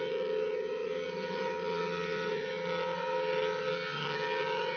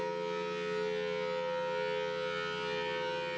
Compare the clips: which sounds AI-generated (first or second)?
first